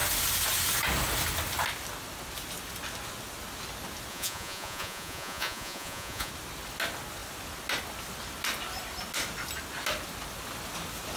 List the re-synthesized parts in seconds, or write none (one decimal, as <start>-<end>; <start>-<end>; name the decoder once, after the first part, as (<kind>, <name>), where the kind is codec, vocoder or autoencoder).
4.1-6.3 (vocoder, Vocos)